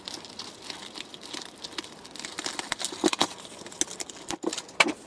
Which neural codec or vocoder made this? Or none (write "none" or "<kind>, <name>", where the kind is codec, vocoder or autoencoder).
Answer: none